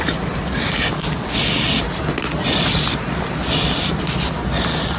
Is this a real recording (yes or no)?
yes